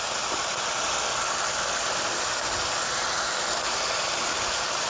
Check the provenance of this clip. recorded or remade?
recorded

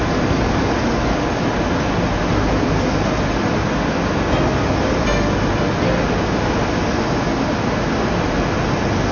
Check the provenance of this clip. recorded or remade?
recorded